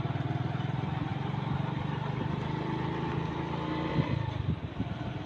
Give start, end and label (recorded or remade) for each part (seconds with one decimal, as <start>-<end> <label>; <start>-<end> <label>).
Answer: 0.0-5.3 recorded